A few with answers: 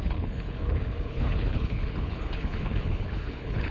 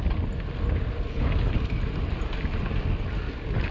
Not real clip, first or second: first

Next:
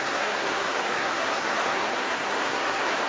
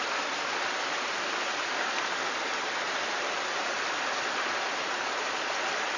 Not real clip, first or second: first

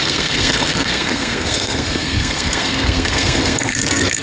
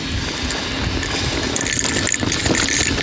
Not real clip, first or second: first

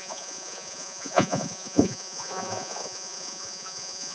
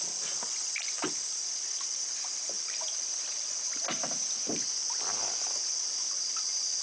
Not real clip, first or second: first